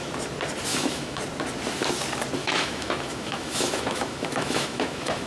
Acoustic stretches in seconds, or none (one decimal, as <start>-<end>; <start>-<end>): 0.0-0.7; 1.2-2.4

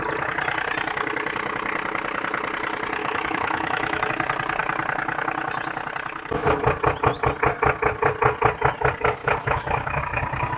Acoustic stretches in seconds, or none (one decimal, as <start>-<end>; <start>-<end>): 0.0-3.0; 4.1-9.2; 10.0-10.6

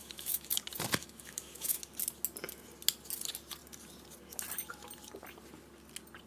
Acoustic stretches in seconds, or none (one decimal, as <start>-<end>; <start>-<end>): 0.6-1.0; 1.8-6.3

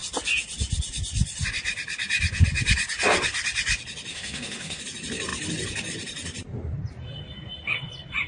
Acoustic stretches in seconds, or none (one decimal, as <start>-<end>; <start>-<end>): 0.0-4.1; 4.8-8.3

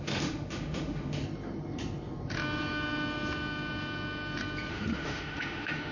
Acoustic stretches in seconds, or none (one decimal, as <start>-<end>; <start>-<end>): 1.2-4.7

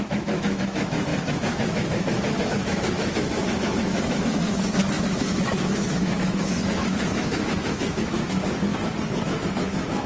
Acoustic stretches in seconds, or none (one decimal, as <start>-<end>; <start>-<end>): 8.7-9.2

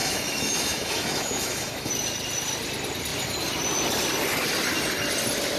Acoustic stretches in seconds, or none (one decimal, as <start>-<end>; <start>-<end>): 1.9-5.6

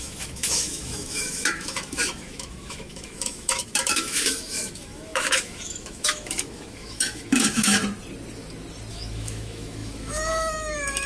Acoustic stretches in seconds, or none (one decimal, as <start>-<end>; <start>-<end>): 7.8-8.9